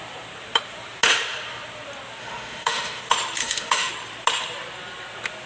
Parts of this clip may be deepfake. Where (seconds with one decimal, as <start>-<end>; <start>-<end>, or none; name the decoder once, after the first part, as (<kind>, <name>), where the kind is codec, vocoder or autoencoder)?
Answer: 2.2-3.0 (autoencoder, DAC-VAE); 3.4-3.9